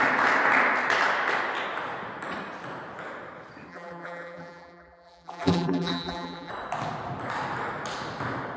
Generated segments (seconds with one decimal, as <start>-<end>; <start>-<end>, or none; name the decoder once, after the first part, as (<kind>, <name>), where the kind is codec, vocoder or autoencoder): 3.7-6.5 (vocoder, BigVGAN v2)